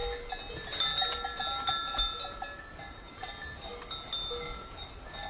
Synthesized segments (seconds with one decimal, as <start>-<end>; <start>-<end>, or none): none

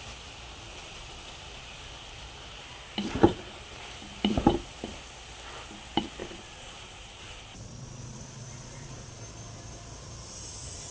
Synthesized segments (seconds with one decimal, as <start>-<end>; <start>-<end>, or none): 0.7-1.3; 6.2-9.2